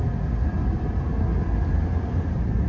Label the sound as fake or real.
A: real